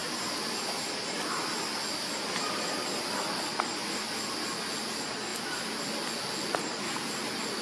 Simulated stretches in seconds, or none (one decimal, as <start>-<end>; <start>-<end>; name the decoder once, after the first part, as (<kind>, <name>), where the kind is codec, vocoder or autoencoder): 0.0-2.8 (vocoder, BigVGAN v2); 5.3-6.8